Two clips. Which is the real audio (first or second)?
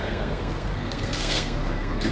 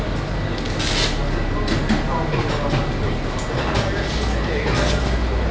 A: second